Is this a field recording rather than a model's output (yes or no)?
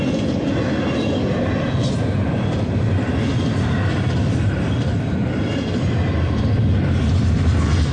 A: yes